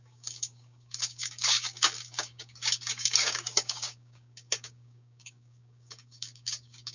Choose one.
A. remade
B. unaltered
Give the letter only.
A